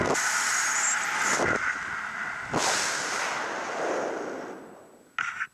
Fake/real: real